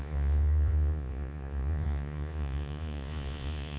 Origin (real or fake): fake